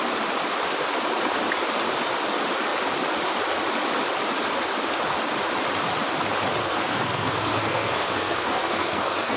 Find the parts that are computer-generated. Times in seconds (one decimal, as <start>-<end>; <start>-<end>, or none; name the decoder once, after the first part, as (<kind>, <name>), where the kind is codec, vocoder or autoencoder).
6.6-9.4 (codec, SNAC)